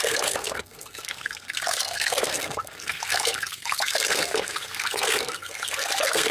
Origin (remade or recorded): remade